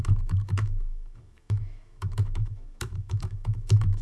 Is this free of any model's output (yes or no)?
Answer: no